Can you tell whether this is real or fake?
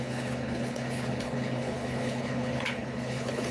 fake